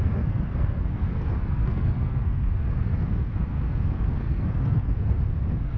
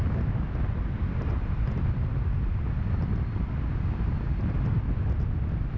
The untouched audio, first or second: second